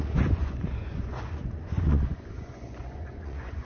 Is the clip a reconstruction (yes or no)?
yes